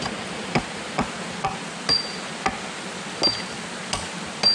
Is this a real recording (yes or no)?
yes